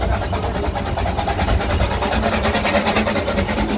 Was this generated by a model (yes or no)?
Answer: no